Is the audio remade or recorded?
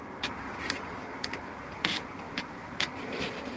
remade